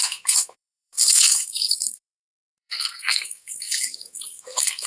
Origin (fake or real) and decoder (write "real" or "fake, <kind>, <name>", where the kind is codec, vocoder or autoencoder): fake, codec, SNAC